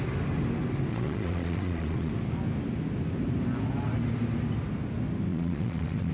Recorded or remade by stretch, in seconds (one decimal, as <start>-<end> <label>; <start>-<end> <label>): 0.0-0.9 recorded; 0.9-2.1 remade; 2.1-5.3 recorded; 5.3-6.1 remade